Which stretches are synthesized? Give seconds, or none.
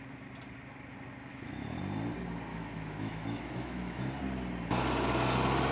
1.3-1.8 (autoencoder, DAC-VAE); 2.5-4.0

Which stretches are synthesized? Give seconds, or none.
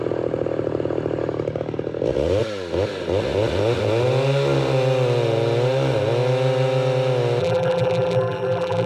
7.4-8.9 (vocoder, BigVGAN v2)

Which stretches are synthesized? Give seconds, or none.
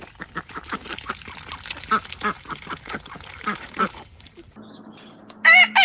0.0-1.1 (vocoder, BigVGAN v2)